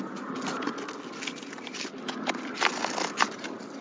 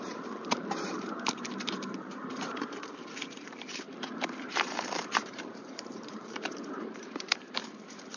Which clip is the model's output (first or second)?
second